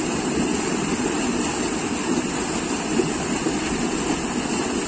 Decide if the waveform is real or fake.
real